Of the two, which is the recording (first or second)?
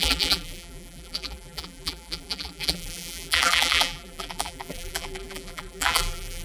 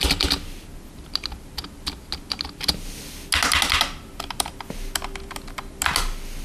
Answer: second